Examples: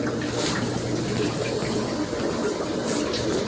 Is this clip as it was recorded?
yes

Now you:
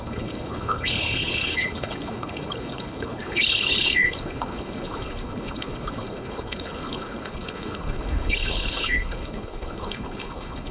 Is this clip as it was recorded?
no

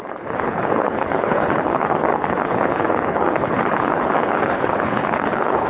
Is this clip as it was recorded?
no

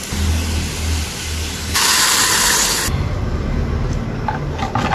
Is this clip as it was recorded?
yes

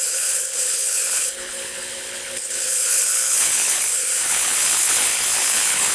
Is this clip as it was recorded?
no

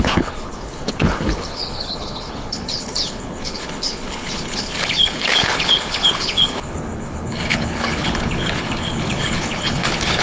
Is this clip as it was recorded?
no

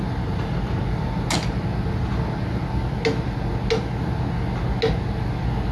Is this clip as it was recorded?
yes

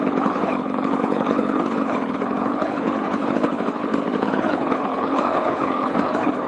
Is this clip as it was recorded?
no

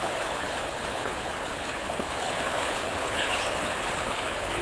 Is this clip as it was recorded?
no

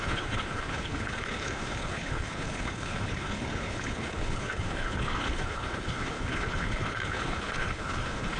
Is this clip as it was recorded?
no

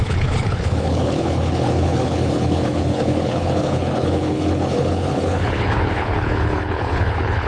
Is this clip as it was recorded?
no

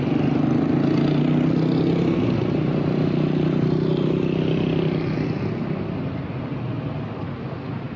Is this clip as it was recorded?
yes